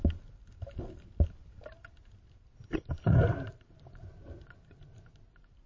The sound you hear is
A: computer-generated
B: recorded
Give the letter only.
B